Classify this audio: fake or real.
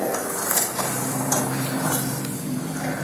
fake